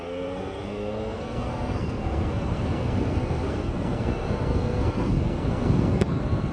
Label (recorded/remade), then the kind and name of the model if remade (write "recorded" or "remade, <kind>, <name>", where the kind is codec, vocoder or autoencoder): remade, codec, SNAC